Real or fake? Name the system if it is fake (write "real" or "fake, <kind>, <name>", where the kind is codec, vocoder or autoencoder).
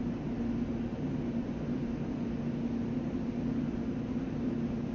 real